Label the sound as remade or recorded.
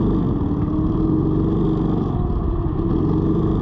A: recorded